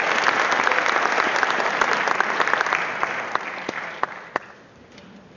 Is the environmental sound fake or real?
real